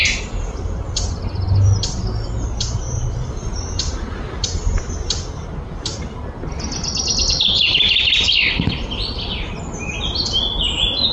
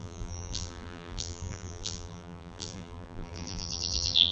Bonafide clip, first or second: first